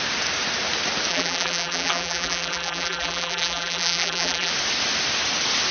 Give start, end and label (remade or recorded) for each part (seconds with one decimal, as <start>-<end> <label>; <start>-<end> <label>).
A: 0.0-1.1 recorded; 1.1-4.5 remade; 4.5-5.7 recorded